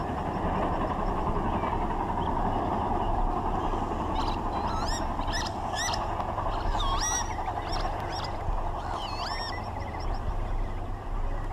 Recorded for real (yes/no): yes